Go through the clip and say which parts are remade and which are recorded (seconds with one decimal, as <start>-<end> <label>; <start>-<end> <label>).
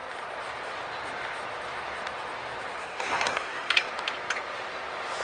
0.0-2.8 recorded; 2.8-3.9 remade; 3.9-5.2 recorded